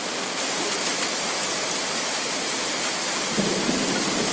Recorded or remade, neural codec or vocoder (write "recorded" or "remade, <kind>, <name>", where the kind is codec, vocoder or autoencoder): recorded